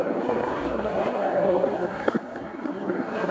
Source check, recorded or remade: remade